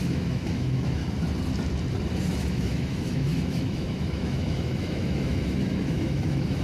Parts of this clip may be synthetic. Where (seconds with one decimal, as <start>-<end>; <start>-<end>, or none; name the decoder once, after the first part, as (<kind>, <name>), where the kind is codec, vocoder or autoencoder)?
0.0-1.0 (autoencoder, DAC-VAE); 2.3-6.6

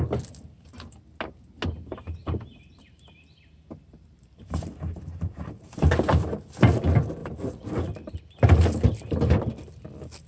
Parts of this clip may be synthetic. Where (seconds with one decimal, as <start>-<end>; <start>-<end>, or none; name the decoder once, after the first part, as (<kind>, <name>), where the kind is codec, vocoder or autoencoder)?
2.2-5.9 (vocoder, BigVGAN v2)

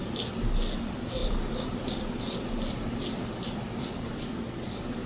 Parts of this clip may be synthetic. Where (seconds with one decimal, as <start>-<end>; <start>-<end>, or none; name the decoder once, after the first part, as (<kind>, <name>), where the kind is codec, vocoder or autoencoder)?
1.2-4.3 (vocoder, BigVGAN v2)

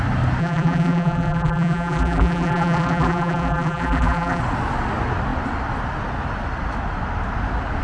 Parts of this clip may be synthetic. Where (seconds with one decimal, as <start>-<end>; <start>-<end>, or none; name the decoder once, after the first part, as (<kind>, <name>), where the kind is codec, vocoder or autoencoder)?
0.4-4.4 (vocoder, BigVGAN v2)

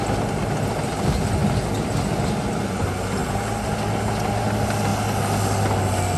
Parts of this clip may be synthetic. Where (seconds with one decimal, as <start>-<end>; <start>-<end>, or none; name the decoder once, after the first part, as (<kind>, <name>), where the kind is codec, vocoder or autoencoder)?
none